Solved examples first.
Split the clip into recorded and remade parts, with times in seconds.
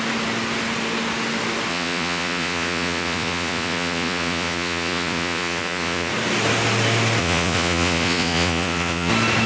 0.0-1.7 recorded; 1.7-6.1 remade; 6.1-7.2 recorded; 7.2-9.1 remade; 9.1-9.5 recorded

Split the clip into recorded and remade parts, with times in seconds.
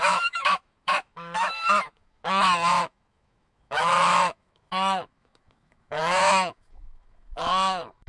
0.0-8.1 remade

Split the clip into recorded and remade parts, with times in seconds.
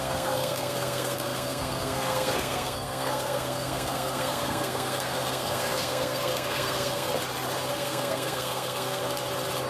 0.0-7.1 remade; 7.1-7.7 recorded; 7.7-9.0 remade; 9.0-9.7 recorded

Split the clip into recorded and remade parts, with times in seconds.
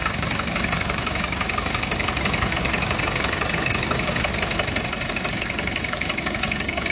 0.0-4.3 remade; 4.3-5.1 recorded; 5.1-6.9 remade